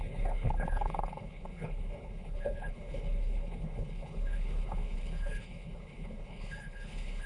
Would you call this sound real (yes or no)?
no